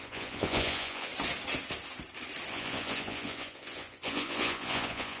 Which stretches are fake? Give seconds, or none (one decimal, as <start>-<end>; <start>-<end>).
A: 0.0-1.1; 2.5-5.2